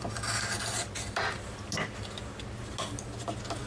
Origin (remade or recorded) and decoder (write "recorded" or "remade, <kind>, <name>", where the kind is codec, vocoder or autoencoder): recorded